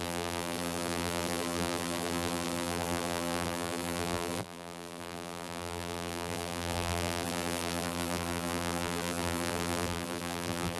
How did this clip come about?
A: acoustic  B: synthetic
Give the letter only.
B